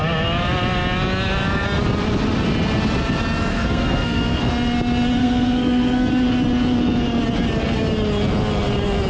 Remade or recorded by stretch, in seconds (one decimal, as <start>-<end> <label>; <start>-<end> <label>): 0.0-3.5 recorded; 3.5-4.4 remade; 4.4-5.2 recorded; 5.2-6.1 remade; 6.1-9.1 recorded